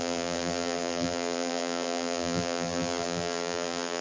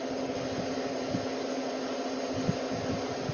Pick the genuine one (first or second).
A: second